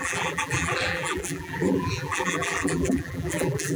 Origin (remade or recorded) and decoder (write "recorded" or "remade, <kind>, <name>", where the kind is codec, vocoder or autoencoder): remade, vocoder, BigVGAN v2